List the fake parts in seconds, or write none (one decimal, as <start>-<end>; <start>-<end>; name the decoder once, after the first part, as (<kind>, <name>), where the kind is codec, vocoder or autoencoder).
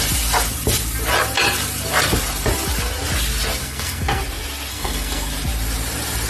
3.6-4.2 (codec, SNAC); 4.7-5.3